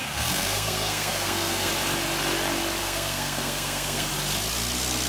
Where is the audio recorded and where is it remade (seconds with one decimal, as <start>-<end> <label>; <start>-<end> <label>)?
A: 0.0-1.7 remade; 1.7-2.8 recorded; 2.8-4.1 remade; 4.1-5.1 recorded